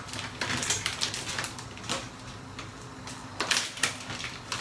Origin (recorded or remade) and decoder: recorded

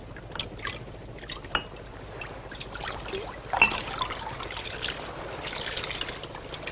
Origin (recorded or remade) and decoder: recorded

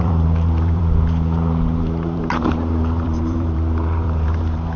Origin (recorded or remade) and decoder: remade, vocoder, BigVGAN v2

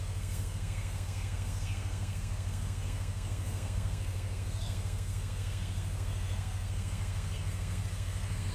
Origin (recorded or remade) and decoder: remade, codec, SNAC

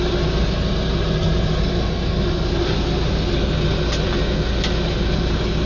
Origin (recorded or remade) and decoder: recorded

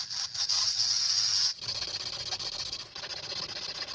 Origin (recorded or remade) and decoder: recorded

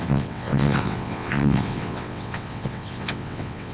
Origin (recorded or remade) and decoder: remade, vocoder, WaveNeXt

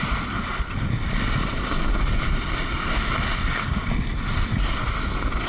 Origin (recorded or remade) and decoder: recorded